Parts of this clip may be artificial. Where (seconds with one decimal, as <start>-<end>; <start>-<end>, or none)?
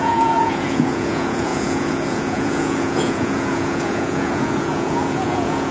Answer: 0.0-5.7